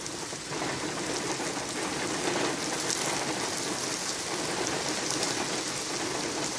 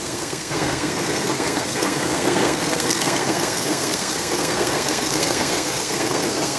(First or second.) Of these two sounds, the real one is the first